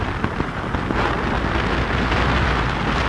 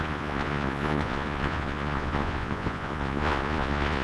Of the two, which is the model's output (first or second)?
second